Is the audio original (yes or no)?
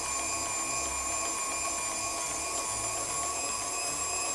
yes